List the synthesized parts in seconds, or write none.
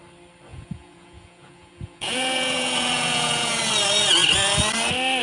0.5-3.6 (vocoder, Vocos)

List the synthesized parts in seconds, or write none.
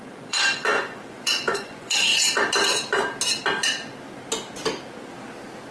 0.0-2.1 (vocoder, Vocos)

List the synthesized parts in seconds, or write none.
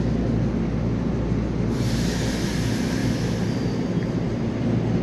none